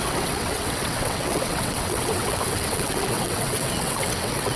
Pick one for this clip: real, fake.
fake